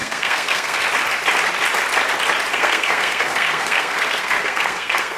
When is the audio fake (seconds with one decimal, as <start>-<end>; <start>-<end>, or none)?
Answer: 0.0-0.8; 2.5-5.2

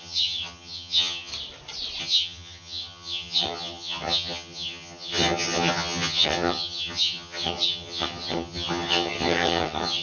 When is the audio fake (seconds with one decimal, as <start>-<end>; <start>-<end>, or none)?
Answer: 0.0-1.3; 2.0-10.0